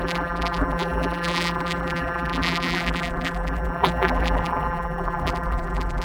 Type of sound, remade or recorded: remade